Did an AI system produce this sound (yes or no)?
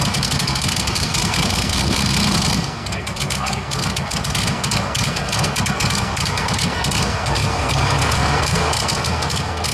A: yes